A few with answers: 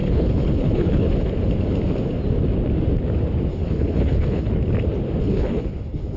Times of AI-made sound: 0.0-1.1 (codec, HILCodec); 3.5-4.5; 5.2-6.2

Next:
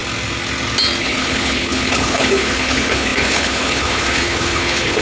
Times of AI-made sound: 1.0-5.0 (codec, HILCodec)

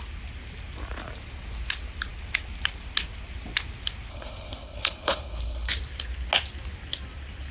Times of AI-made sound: 4.1-5.7 (codec, HILCodec)